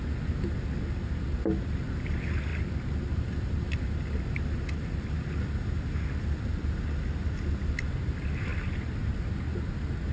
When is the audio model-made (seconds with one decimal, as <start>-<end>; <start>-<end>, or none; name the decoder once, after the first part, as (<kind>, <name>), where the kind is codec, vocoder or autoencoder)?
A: none